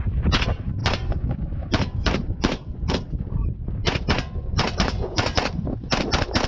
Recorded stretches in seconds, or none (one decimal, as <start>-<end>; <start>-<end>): 0.0-0.8; 2.9-3.8; 5.9-6.5